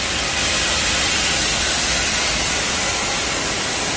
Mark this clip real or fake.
real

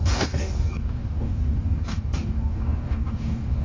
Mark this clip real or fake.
fake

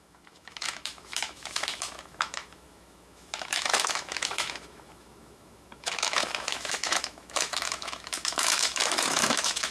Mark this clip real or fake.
fake